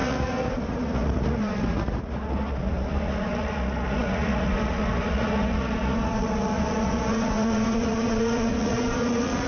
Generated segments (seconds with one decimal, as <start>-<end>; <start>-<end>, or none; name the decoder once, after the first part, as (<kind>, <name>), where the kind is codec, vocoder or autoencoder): 0.0-9.5 (vocoder, Vocos)